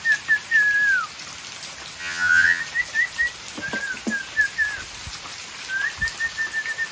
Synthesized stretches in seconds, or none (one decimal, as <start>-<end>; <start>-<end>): 2.0-2.6